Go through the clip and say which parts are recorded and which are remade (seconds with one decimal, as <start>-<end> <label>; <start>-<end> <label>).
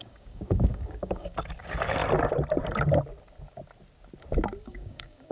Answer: 0.0-2.0 remade; 2.0-4.6 recorded; 4.6-5.3 remade